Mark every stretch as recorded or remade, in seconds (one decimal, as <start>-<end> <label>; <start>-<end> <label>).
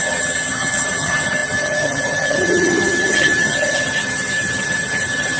0.0-5.4 remade